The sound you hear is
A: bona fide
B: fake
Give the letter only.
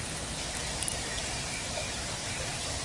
B